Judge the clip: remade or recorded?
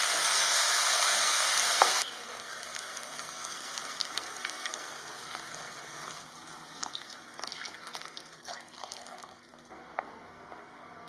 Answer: remade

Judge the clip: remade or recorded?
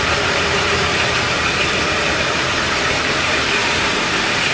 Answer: remade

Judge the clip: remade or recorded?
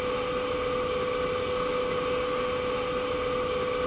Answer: recorded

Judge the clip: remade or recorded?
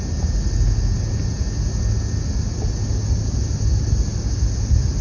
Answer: recorded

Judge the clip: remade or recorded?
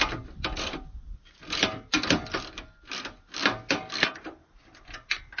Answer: recorded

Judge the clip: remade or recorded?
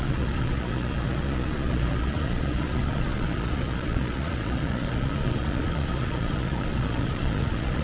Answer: remade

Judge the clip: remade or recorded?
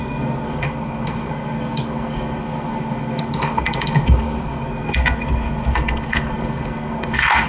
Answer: remade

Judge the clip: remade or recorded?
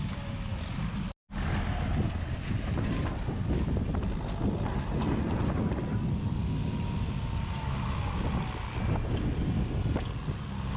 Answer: recorded